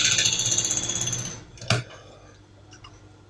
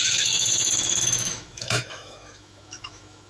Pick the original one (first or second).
first